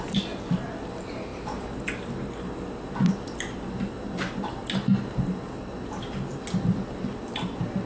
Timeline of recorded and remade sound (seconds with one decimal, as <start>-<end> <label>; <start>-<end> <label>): 0.0-7.9 recorded